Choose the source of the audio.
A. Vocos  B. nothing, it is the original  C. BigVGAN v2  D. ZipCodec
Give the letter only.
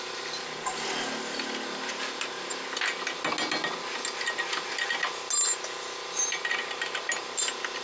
B